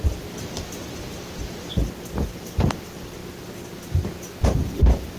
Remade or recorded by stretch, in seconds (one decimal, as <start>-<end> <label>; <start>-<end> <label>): 0.0-5.2 recorded